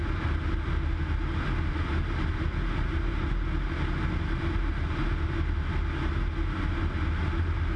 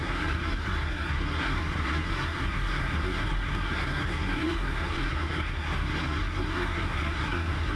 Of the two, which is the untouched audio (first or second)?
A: first